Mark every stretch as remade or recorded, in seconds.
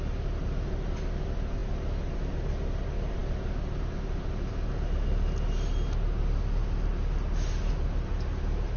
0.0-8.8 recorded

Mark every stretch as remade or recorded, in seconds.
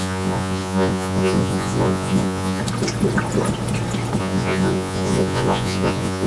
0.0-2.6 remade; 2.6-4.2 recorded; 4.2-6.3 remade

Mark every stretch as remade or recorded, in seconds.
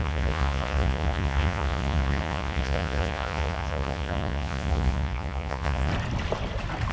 0.0-5.9 remade; 5.9-6.9 recorded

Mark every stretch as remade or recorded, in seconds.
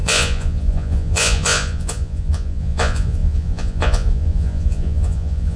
0.0-5.6 remade